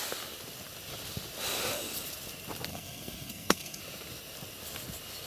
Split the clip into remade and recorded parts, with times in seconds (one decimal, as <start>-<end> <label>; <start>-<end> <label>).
0.0-2.7 recorded; 2.7-3.8 remade; 3.8-5.3 recorded

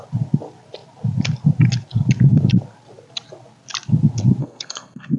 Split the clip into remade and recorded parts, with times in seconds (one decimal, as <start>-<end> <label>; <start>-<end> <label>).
0.0-4.4 recorded; 4.4-5.2 remade

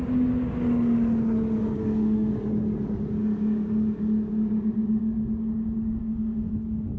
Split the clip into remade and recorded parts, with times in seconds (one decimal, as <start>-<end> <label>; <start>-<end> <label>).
0.0-1.8 recorded; 1.8-2.3 remade; 2.3-6.0 recorded; 6.0-6.5 remade; 6.5-7.0 recorded

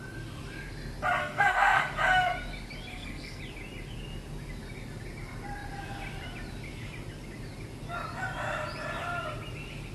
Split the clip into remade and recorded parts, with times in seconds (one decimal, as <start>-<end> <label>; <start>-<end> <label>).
0.0-1.2 recorded; 1.2-1.8 remade; 1.8-2.9 recorded; 2.9-3.4 remade; 3.4-9.9 recorded

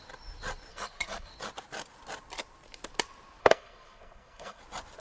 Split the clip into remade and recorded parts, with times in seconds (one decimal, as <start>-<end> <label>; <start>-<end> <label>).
0.0-0.7 recorded; 0.7-1.3 remade; 1.3-3.4 recorded; 3.4-4.6 remade; 4.6-5.0 recorded

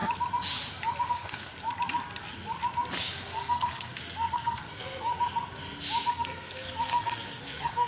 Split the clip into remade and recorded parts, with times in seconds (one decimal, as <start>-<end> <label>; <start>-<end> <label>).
0.0-1.1 recorded; 1.1-1.5 remade; 1.5-3.1 recorded; 3.1-5.1 remade; 5.1-6.1 recorded; 6.1-7.9 remade